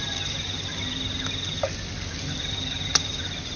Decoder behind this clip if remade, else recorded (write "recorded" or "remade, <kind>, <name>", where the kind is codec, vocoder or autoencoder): recorded